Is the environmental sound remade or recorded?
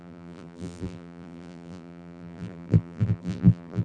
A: remade